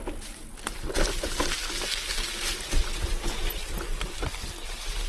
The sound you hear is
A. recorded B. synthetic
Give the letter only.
A